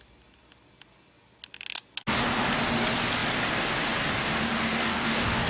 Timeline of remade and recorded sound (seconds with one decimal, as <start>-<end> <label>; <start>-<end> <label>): 0.0-4.8 recorded; 4.8-5.5 remade